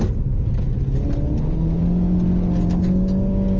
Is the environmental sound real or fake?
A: real